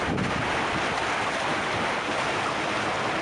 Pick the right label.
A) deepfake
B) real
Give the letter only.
B